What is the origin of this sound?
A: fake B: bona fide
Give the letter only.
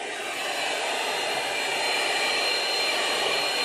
A